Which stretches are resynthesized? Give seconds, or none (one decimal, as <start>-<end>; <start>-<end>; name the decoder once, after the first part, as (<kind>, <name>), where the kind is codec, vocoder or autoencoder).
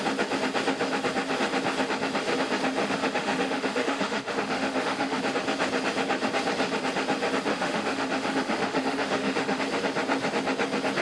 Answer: 2.8-5.2 (autoencoder, DAC-VAE); 7.5-9.6